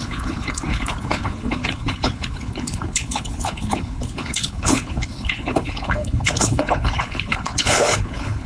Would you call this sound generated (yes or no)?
yes